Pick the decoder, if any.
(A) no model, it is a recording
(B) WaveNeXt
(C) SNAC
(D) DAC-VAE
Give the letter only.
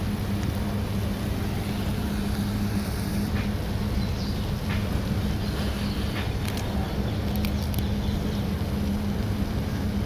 A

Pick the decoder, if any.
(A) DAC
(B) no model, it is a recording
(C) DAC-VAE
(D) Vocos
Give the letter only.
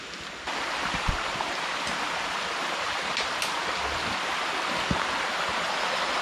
B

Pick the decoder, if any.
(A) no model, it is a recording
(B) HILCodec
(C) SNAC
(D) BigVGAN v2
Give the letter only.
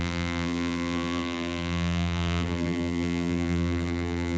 D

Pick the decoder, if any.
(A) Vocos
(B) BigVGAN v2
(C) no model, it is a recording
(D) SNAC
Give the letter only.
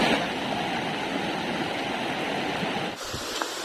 C